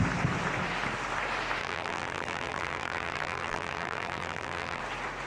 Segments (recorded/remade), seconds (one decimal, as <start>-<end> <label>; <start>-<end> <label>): 0.0-1.6 recorded; 1.6-4.8 remade; 4.8-5.3 recorded